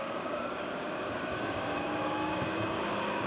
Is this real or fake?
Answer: fake